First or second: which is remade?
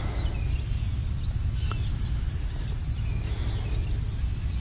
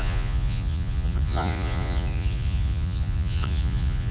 second